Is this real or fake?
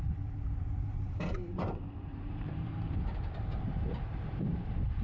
fake